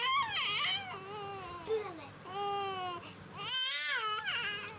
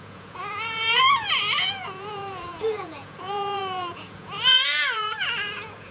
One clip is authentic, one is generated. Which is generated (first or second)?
second